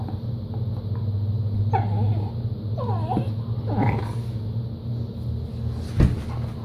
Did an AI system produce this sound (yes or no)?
no